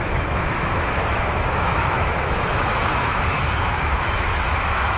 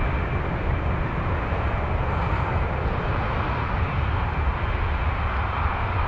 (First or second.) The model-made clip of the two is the first